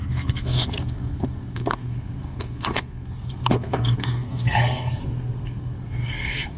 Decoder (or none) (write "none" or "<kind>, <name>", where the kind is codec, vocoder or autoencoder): codec, SNAC